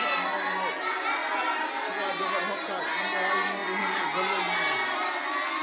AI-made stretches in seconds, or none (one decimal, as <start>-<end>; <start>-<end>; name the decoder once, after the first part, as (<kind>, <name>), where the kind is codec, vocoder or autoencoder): none